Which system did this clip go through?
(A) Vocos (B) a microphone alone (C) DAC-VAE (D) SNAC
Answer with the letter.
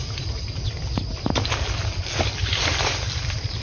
B